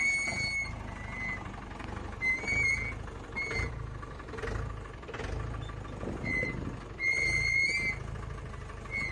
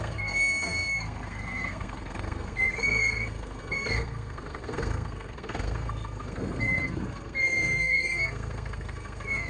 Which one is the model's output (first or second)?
second